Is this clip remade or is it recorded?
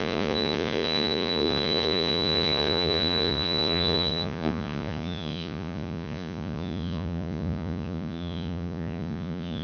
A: remade